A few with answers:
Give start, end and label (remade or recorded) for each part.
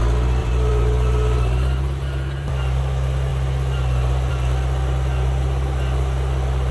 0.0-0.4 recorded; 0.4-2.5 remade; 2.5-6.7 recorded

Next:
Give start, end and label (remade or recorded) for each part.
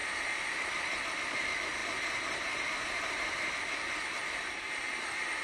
0.0-1.8 recorded; 1.8-3.5 remade; 3.5-4.2 recorded; 4.2-5.4 remade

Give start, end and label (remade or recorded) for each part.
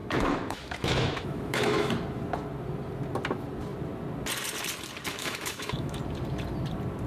0.0-1.9 remade; 1.9-5.1 recorded; 5.1-6.0 remade; 6.0-7.1 recorded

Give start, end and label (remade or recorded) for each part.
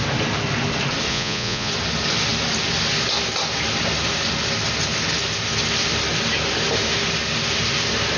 0.0-1.1 recorded; 1.1-1.7 remade; 1.7-8.2 recorded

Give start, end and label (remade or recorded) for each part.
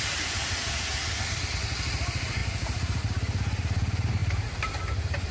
0.0-0.9 remade; 0.9-2.0 recorded; 2.0-5.3 remade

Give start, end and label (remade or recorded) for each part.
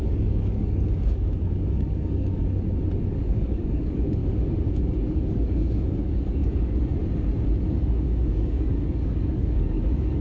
0.0-2.4 remade; 2.4-3.1 recorded; 3.1-4.2 remade; 4.2-4.7 recorded; 4.7-7.0 remade; 7.0-7.6 recorded; 7.6-10.2 remade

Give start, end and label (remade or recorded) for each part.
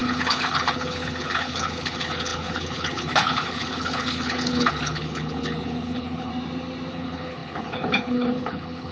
0.0-6.3 remade; 6.3-6.9 recorded; 6.9-8.9 remade